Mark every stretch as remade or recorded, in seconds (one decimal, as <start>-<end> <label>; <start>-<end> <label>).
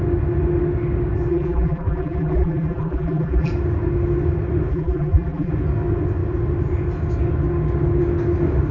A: 0.0-1.3 recorded; 1.3-3.5 remade; 3.5-4.7 recorded; 4.7-5.5 remade; 5.5-8.7 recorded